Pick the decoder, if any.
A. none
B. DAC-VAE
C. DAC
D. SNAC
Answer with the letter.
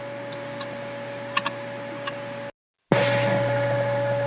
A